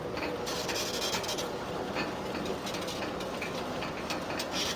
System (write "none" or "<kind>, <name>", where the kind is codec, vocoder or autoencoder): none